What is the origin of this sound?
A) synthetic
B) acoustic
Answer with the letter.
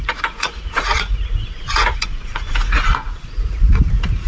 A